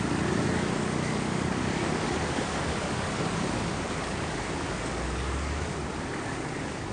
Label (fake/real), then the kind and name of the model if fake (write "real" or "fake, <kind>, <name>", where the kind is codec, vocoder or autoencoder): fake, codec, DAC